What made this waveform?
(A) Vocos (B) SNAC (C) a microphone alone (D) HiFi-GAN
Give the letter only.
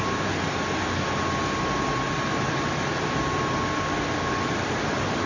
C